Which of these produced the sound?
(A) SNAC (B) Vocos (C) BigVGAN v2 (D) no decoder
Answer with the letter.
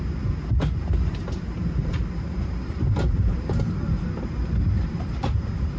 C